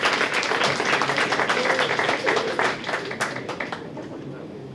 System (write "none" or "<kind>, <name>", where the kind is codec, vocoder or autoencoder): none